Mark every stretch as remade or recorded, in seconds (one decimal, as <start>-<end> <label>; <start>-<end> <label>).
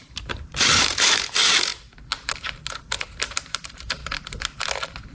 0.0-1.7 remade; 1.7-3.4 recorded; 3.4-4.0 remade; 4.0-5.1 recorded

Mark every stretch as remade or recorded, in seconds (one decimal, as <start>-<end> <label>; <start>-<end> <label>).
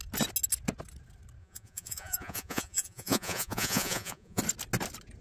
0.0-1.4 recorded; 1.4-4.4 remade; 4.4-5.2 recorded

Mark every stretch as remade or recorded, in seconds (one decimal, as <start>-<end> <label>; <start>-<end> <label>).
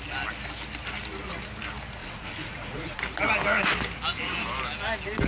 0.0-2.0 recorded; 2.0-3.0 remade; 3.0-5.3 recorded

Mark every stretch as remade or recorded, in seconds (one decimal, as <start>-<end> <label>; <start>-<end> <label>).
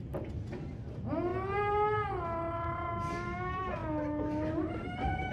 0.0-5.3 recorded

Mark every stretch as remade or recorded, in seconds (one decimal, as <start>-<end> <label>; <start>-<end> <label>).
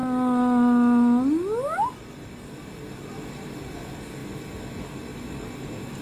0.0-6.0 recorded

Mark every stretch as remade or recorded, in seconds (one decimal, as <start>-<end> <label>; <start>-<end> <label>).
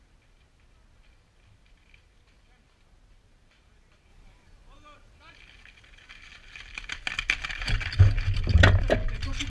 0.0-9.5 recorded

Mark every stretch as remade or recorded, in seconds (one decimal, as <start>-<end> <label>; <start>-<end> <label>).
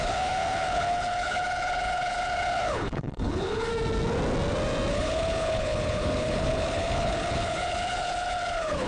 0.0-3.7 remade; 3.7-4.9 recorded; 4.9-8.9 remade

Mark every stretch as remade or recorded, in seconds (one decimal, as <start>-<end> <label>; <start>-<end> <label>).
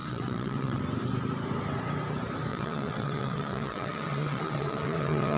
0.0-0.8 remade; 0.8-2.5 recorded; 2.5-5.4 remade